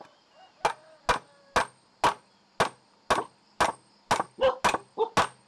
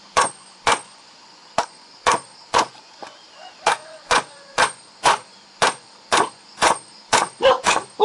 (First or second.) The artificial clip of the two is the second